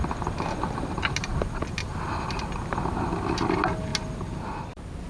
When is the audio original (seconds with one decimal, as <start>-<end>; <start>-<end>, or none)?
0.0-5.1